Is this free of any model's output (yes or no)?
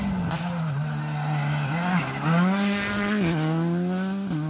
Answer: yes